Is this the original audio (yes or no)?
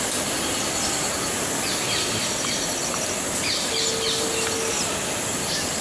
yes